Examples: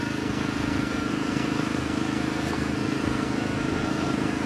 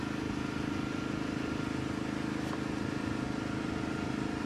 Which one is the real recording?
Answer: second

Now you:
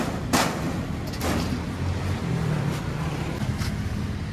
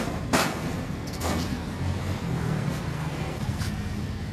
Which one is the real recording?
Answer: first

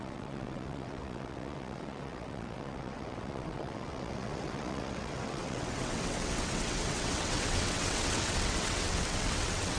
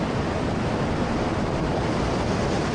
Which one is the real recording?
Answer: second